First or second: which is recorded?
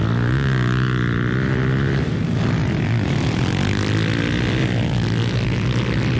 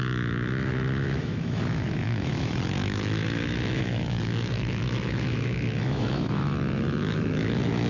first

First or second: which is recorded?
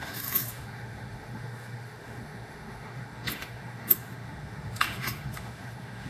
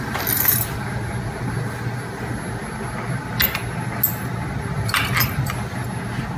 second